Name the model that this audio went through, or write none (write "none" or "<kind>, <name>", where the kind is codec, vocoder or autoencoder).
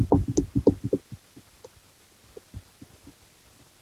none